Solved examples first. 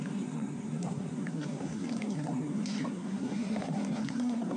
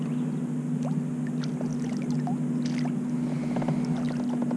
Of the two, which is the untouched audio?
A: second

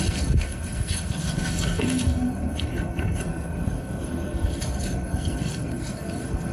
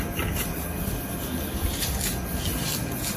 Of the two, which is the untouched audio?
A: second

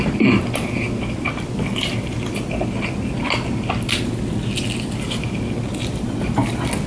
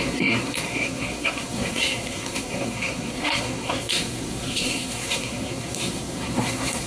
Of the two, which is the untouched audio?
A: first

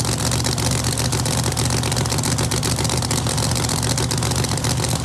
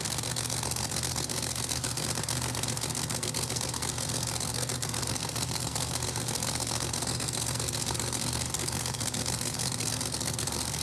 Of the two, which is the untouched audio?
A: first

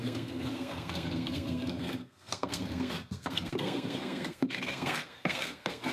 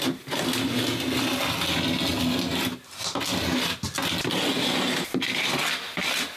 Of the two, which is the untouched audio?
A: second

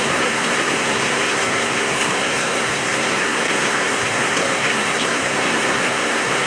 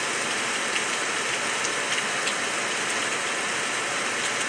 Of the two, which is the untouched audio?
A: second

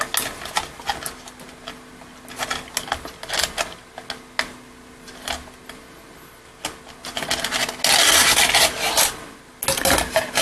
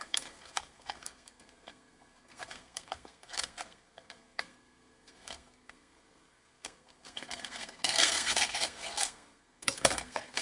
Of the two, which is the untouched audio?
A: first